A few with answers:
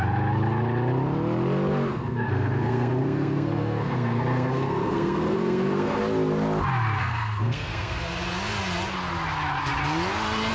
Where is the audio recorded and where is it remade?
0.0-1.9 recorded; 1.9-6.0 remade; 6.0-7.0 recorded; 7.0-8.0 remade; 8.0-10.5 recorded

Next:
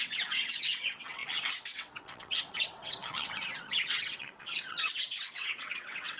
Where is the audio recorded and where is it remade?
0.0-6.2 remade

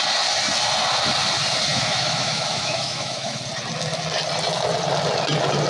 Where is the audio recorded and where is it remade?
0.0-1.7 recorded; 1.7-3.4 remade; 3.4-5.7 recorded

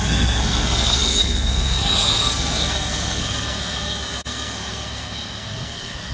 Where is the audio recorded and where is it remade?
0.0-6.1 remade

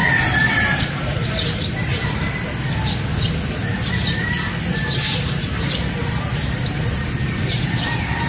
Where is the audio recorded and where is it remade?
0.0-0.5 recorded; 0.5-1.9 remade; 1.9-4.7 recorded; 4.7-8.3 remade

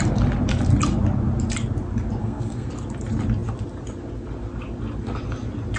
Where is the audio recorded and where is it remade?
0.0-2.2 recorded; 2.2-2.7 remade; 2.7-5.8 recorded

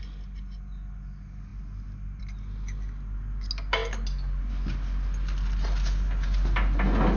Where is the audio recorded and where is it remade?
0.0-7.2 recorded

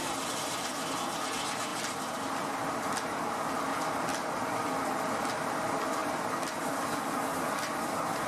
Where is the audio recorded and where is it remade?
0.0-0.9 remade; 0.9-4.1 recorded; 4.1-4.8 remade; 4.8-6.0 recorded; 6.0-7.0 remade; 7.0-8.3 recorded